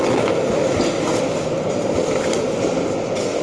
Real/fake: real